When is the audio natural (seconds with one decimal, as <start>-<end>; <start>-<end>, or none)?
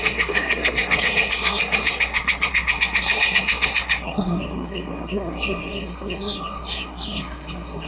none